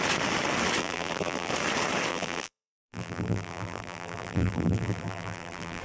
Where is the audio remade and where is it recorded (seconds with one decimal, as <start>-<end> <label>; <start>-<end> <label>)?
0.0-0.8 recorded; 0.8-1.5 remade; 1.5-2.1 recorded; 2.1-5.8 remade